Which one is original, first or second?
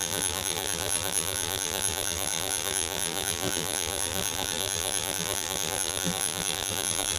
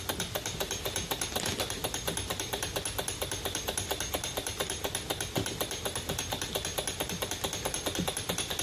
second